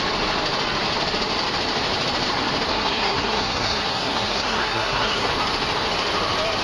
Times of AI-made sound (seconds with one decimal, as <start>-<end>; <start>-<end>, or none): 2.7-5.3